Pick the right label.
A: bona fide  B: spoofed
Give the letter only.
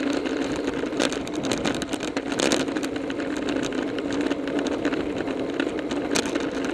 A